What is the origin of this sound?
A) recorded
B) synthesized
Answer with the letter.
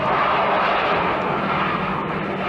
A